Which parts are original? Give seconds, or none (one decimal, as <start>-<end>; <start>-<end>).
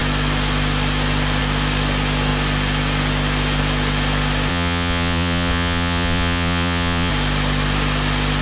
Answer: 0.0-4.5; 7.1-8.4